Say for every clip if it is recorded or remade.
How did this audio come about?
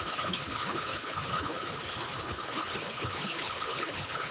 remade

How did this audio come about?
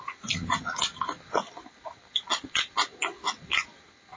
recorded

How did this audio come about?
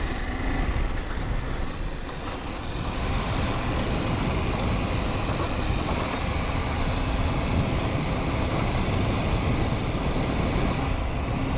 recorded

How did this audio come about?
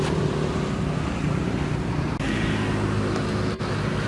recorded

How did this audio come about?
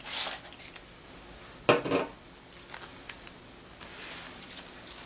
recorded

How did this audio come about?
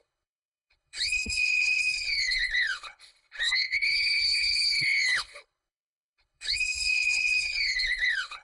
remade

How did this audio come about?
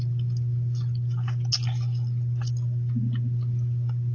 recorded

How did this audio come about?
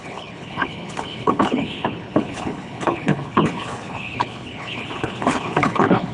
remade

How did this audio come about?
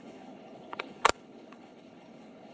remade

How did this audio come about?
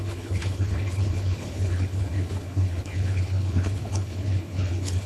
remade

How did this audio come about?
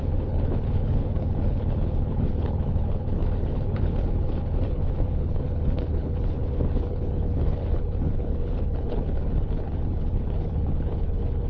remade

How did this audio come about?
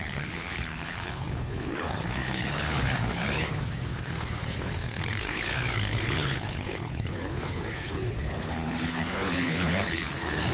remade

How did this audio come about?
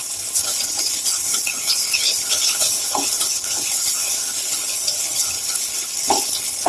remade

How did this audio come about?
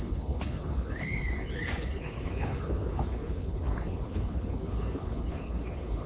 remade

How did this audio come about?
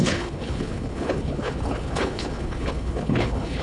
remade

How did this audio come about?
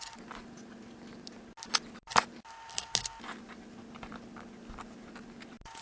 recorded